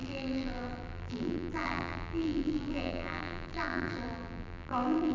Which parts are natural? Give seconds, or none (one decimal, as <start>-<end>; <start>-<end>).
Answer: none